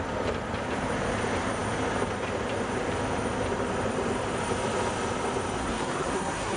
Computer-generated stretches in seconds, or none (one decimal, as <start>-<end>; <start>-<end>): 5.6-6.6